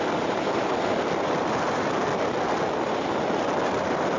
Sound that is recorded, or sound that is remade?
recorded